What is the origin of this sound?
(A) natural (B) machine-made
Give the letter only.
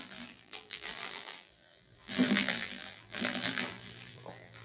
B